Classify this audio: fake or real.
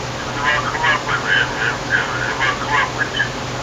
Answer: real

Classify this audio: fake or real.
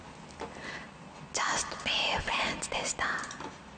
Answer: real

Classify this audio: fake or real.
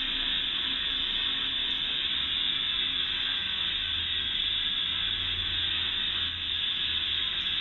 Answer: real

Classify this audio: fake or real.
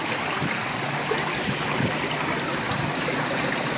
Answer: real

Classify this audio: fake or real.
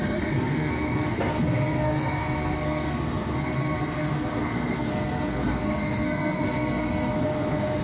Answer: fake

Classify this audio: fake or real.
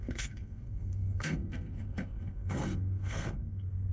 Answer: fake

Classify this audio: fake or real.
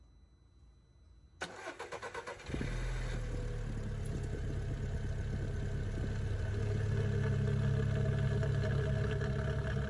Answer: real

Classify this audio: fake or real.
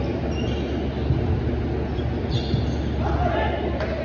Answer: real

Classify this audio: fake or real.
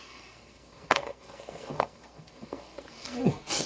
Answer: fake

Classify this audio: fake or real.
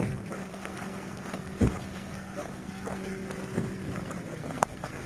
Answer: fake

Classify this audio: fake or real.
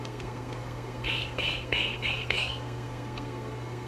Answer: fake